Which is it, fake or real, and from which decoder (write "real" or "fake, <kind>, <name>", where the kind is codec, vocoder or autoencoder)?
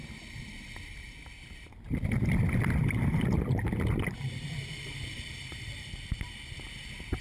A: real